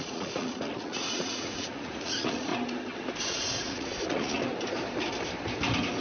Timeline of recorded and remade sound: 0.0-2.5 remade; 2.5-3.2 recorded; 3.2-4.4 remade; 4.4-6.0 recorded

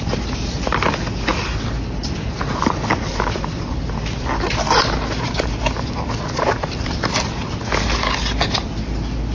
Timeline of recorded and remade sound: 0.0-9.3 recorded